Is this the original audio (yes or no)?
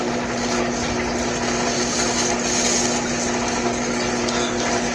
yes